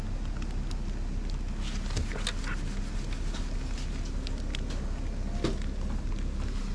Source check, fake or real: real